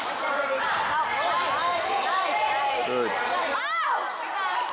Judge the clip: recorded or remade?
recorded